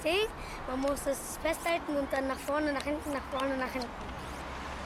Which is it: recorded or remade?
recorded